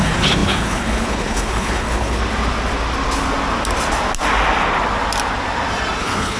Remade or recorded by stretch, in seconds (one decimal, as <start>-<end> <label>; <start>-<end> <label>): 0.0-2.2 remade; 2.2-6.0 recorded; 6.0-6.4 remade